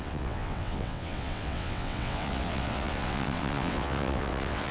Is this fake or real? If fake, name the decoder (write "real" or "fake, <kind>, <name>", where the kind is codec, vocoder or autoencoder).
fake, vocoder, WaveNeXt